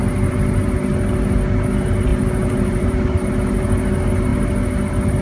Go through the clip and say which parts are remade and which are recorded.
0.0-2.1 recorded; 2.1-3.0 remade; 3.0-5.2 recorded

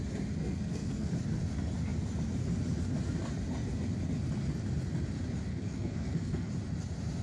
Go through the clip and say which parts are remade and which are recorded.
0.0-0.4 recorded; 0.4-1.1 remade; 1.1-5.5 recorded; 5.5-6.5 remade; 6.5-7.2 recorded

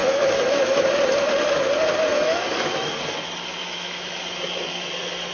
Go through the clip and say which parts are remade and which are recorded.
0.0-0.9 remade; 0.9-2.1 recorded; 2.1-2.9 remade; 2.9-3.6 recorded; 3.6-4.2 remade; 4.2-5.3 recorded